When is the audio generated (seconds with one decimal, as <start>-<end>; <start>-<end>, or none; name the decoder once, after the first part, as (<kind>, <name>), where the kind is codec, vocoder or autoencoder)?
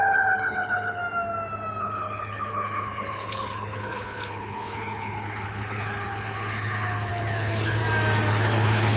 0.0-1.0 (codec, HILCodec); 1.8-7.8; 8.3-9.0